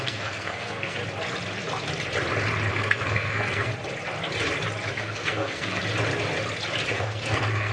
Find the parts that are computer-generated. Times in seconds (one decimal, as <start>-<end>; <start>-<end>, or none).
0.0-1.0; 2.7-3.7; 4.9-5.8; 6.9-7.7